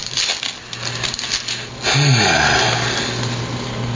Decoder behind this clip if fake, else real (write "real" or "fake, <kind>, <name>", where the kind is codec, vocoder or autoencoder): fake, vocoder, BigVGAN v2